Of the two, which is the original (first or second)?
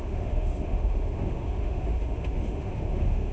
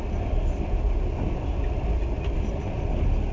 second